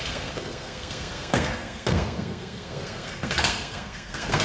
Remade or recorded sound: remade